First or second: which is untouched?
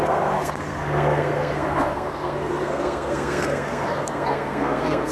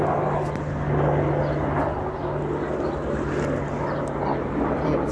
second